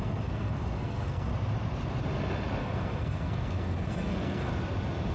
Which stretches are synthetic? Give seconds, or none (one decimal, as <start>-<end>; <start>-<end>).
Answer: 0.0-1.3; 2.6-4.5

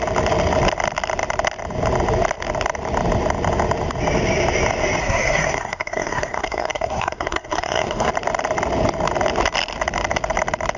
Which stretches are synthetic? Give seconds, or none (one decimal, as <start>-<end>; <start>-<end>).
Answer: 5.0-8.1

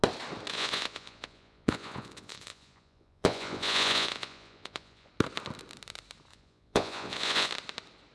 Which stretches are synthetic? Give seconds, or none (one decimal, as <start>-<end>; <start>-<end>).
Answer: 0.5-5.1; 6.3-7.5

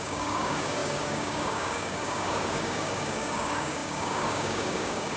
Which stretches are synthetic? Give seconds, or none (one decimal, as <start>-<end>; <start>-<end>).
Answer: 0.0-5.2

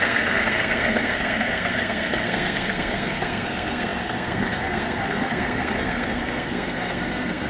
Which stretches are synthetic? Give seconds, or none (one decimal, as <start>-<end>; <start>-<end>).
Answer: 0.0-7.5

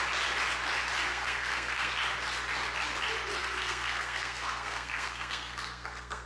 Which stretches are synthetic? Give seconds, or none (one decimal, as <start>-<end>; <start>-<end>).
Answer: 1.1-1.9; 3.4-6.3